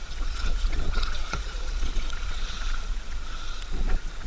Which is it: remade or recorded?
remade